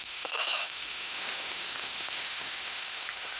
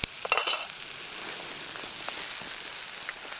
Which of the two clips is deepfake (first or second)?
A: first